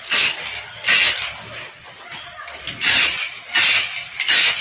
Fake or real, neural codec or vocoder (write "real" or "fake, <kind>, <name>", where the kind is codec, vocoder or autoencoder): real